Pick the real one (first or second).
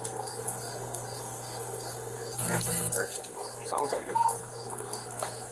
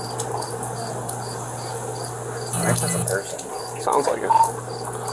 second